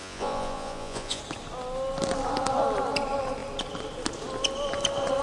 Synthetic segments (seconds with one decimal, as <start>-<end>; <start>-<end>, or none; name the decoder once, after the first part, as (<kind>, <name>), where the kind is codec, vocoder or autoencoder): 0.0-1.2 (vocoder, Vocos)